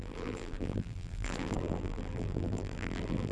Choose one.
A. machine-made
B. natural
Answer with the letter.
A